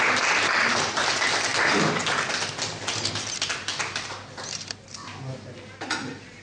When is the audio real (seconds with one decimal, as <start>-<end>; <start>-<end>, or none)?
0.0-6.4